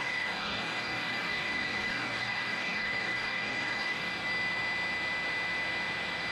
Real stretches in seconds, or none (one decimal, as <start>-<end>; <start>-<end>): 4.1-6.3